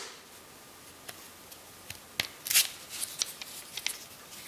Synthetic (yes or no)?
no